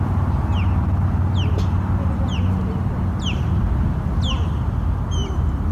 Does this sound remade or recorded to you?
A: recorded